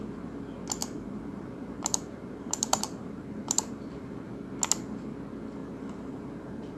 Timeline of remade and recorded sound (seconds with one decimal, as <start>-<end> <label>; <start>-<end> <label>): 0.0-0.8 recorded; 0.8-4.3 remade; 4.3-5.6 recorded; 5.6-6.8 remade